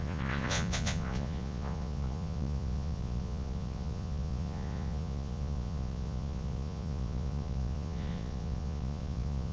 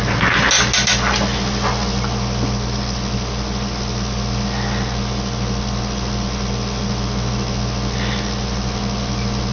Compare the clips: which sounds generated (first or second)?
first